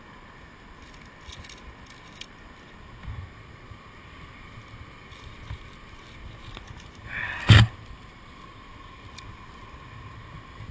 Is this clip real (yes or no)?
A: yes